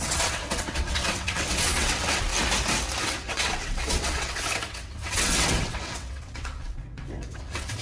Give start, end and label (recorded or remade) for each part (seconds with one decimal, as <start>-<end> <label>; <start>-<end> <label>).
0.0-2.3 remade; 2.3-3.0 recorded; 3.0-7.8 remade